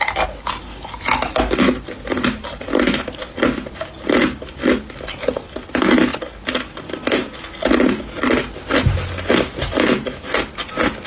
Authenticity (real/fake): real